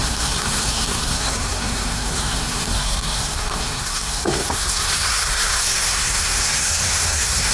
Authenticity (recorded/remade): remade